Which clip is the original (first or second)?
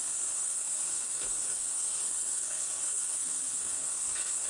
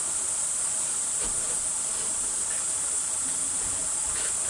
second